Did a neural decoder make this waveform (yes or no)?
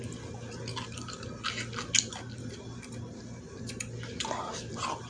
no